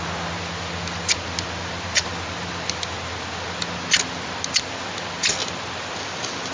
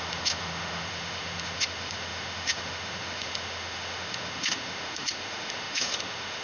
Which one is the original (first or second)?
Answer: first